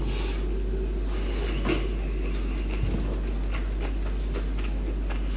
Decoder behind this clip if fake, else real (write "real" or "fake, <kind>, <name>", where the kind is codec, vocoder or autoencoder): real